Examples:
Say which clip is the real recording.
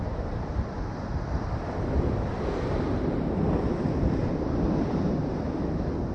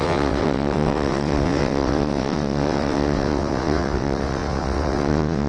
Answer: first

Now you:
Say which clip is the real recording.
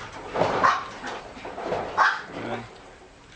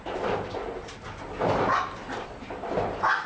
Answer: second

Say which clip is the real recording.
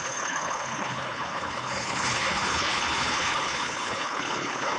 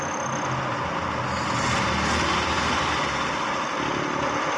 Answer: second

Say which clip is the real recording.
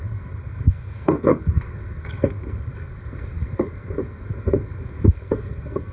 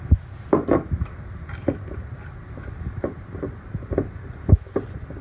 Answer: second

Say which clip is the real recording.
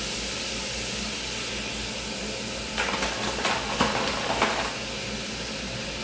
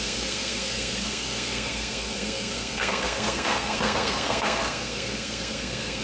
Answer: first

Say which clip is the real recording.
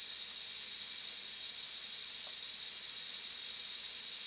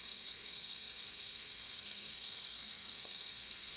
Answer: first